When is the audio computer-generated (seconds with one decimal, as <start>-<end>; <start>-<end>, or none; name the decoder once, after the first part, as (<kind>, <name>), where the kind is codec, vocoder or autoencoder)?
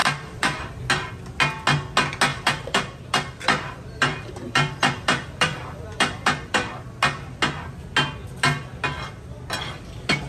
0.0-0.8 (vocoder, BigVGAN v2); 2.3-6.7